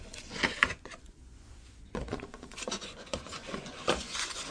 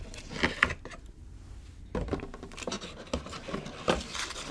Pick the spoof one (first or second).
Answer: first